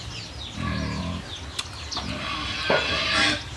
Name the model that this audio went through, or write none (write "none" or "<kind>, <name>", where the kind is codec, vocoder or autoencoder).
none